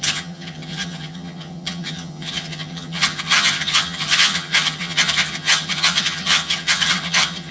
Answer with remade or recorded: remade